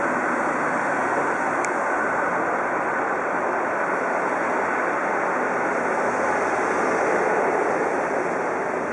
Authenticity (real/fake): real